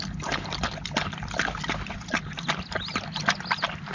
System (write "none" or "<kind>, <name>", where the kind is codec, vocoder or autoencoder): vocoder, BigVGAN v2